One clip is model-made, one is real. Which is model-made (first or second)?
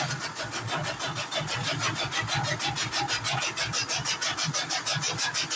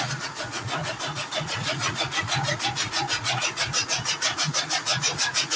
second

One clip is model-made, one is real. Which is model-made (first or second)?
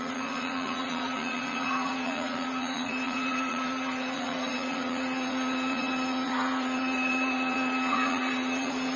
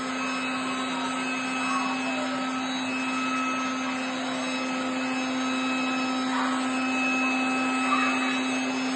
first